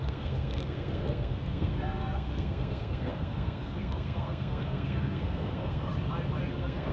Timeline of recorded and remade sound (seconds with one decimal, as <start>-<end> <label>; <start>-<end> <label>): 0.0-5.9 remade; 5.9-6.5 recorded; 6.5-6.9 remade